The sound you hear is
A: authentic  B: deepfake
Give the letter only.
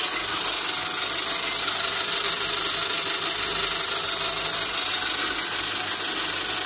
A